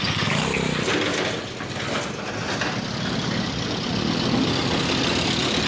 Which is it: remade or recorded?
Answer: recorded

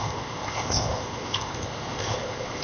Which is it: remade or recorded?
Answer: remade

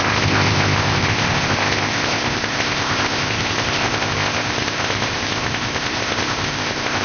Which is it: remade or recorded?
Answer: remade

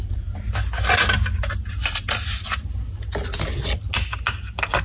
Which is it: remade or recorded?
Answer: recorded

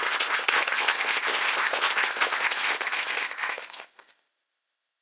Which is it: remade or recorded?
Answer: remade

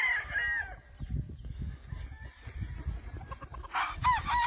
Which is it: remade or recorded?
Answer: recorded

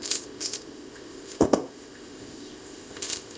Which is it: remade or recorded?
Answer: remade